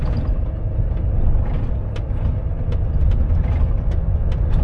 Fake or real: real